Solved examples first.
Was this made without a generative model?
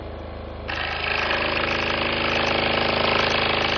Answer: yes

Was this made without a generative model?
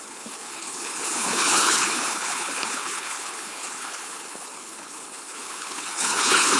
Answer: no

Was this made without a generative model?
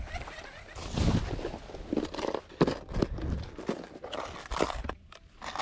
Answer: yes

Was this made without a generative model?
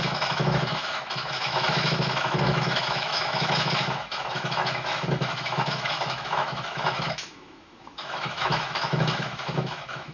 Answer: no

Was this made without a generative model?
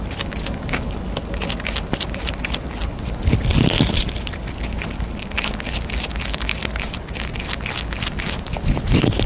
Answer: yes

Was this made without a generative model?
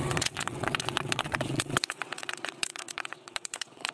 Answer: no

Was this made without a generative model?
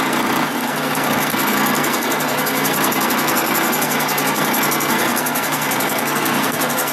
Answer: no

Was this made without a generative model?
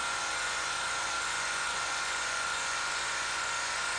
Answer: no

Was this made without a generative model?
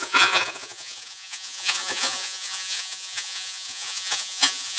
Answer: no